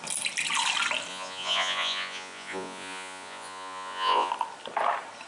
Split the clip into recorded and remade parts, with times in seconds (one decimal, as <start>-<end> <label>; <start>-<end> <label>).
0.0-1.1 recorded; 1.1-4.3 remade; 4.3-5.3 recorded